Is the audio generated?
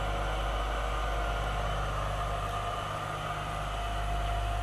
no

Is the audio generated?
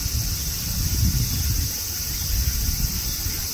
no